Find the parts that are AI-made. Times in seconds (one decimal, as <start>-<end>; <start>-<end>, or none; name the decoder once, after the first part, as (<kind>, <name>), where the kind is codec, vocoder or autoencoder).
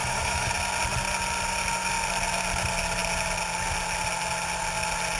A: 0.0-0.5 (autoencoder, DAC-VAE)